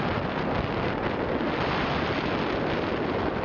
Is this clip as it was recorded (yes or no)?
yes